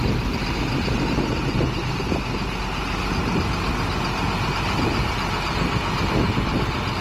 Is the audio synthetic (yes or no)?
no